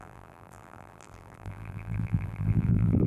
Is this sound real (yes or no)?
no